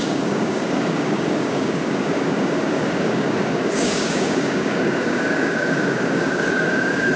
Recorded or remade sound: remade